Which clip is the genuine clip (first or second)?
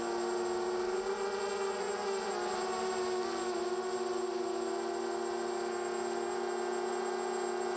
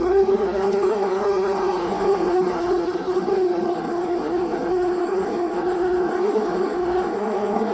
first